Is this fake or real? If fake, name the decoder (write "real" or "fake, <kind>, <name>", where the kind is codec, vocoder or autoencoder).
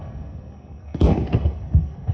fake, codec, SNAC